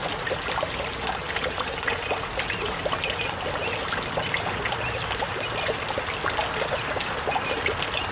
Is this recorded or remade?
recorded